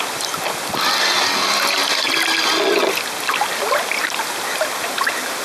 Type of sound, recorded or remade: recorded